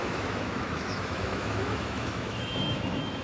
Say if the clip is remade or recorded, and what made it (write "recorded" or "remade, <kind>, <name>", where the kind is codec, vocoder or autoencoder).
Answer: remade, autoencoder, DAC-VAE